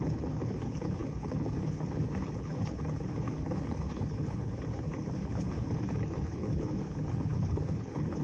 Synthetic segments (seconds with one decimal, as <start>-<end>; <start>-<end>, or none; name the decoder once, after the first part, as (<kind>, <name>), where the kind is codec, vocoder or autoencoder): 0.0-8.2 (codec, HILCodec)